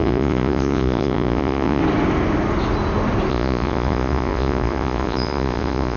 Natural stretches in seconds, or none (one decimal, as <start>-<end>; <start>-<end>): 1.8-3.3